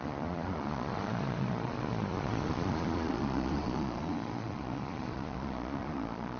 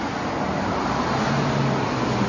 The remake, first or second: first